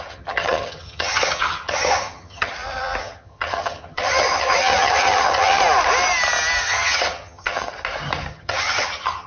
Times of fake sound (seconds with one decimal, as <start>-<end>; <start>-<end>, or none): 0.0-2.5; 3.0-5.6; 6.6-7.7; 8.3-9.3